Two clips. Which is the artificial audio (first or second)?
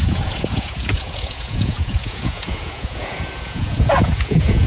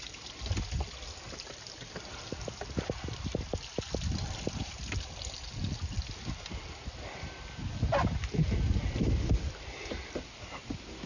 first